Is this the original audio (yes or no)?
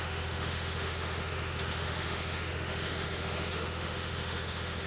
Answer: no